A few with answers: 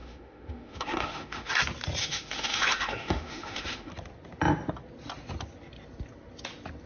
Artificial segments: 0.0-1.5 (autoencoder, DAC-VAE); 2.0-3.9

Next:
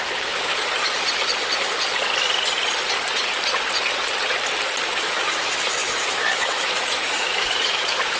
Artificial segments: 0.0-0.5 (autoencoder, DAC-VAE); 5.0-8.2

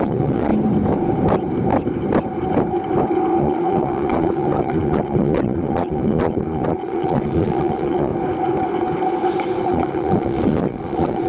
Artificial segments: 0.0-0.5 (vocoder, Vocos); 3.4-8.1; 9.6-11.3

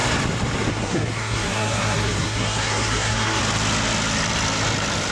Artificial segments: 0.7-3.4 (codec, SNAC)

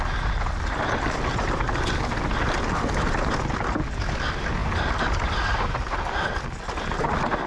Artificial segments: none

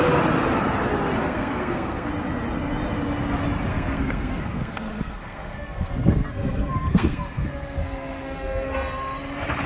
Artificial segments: 1.2-2.1 (codec, SNAC); 3.7-9.0